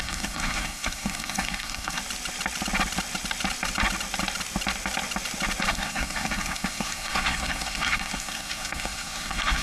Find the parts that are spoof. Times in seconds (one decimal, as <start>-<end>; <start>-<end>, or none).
0.0-2.0; 5.7-9.6